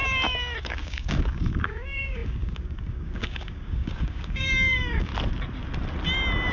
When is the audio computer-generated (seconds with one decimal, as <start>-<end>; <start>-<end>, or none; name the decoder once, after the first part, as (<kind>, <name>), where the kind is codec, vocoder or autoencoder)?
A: 0.6-5.1 (codec, DAC)